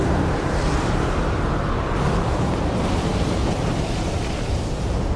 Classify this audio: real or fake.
fake